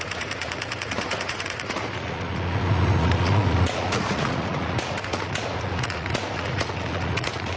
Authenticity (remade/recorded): remade